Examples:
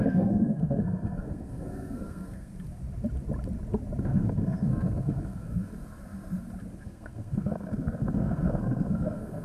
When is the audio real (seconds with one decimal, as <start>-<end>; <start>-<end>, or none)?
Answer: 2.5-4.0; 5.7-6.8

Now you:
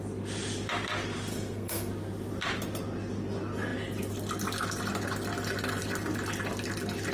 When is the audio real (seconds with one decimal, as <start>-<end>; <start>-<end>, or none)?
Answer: 0.0-1.3; 1.9-7.1

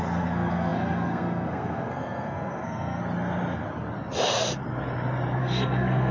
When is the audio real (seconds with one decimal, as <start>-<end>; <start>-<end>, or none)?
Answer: 3.0-5.4

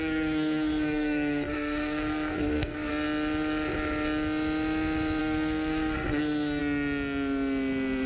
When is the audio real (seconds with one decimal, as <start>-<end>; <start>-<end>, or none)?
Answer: 2.9-5.2; 6.6-8.1

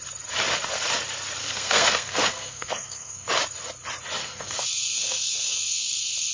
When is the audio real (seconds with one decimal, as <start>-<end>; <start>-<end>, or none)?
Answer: 0.0-1.4; 3.3-4.2

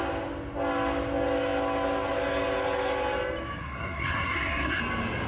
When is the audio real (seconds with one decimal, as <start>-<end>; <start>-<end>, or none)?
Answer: 0.0-3.6; 4.8-5.3